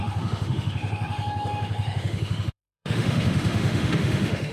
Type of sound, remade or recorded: remade